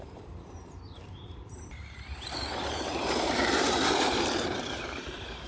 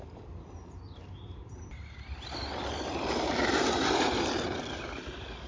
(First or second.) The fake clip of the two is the first